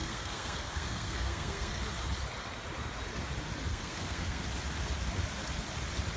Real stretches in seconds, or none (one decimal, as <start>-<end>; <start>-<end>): 1.8-3.7; 4.4-6.2